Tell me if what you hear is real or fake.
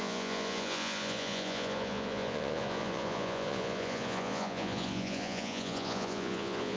fake